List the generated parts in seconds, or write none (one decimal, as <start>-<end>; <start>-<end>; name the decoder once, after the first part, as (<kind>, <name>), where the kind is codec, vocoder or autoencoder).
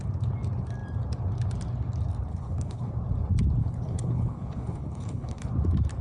2.3-2.9 (codec, HILCodec); 3.6-5.5